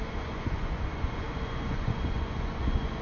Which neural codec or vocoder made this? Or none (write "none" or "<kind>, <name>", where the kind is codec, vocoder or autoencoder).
vocoder, Vocos